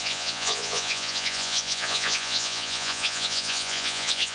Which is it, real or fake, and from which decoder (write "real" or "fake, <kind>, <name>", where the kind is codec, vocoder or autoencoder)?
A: fake, vocoder, Vocos